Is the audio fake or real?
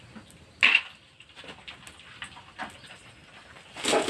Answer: real